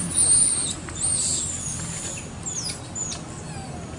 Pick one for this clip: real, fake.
real